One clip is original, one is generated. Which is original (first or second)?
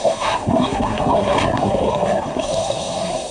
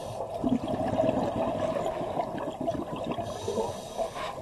second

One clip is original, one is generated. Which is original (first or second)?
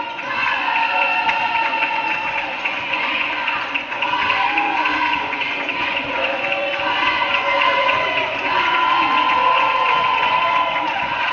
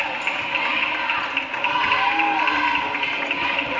second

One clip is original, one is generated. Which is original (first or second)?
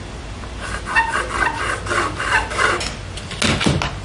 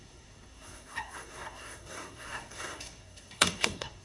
first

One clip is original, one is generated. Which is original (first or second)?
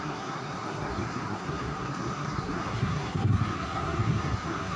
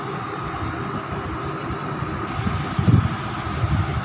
second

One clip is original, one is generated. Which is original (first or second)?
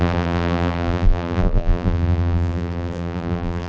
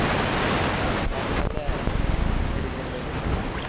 second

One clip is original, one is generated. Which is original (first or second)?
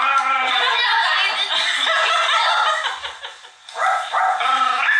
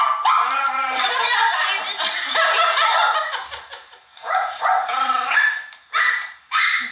first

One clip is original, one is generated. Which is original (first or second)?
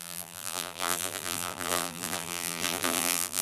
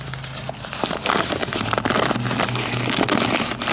second